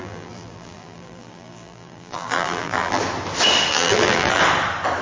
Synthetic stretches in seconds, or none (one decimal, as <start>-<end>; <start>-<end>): 0.0-3.0; 3.7-4.4